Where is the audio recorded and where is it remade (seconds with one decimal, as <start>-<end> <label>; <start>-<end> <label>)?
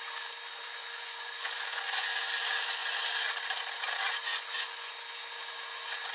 0.0-0.8 recorded; 0.8-2.2 remade; 2.2-4.3 recorded; 4.3-4.9 remade; 4.9-6.1 recorded